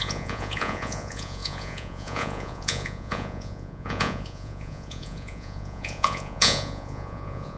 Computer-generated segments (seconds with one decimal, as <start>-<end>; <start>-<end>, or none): 0.0-7.6